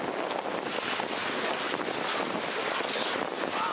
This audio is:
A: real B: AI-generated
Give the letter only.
A